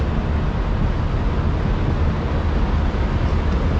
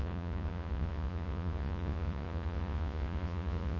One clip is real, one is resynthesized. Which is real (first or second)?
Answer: first